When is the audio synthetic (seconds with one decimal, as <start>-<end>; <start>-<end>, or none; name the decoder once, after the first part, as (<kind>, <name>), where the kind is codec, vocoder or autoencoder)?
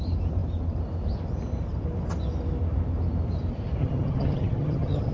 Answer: 3.8-5.1 (vocoder, HiFi-GAN)